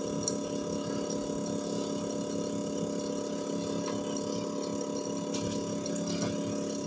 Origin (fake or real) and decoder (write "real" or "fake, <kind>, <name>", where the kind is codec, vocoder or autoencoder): real